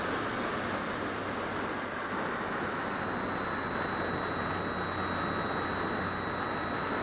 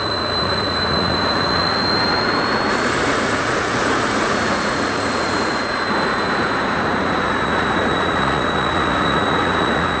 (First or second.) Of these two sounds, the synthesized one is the second